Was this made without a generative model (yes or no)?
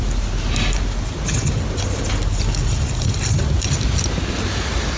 yes